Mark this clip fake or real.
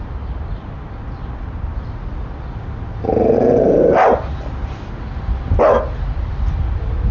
real